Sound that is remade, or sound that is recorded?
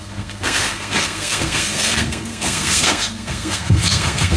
remade